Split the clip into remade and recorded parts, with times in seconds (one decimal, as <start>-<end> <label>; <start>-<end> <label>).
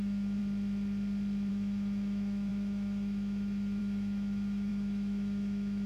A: 0.0-0.4 remade; 0.4-1.5 recorded; 1.5-5.9 remade